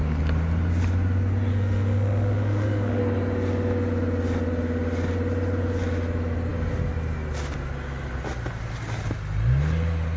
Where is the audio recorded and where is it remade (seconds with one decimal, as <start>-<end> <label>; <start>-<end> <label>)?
0.0-1.5 recorded; 1.5-3.0 remade; 3.0-10.2 recorded